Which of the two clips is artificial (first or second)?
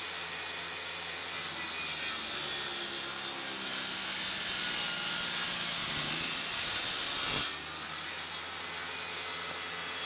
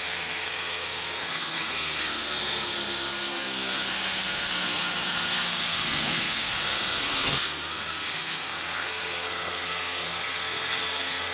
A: second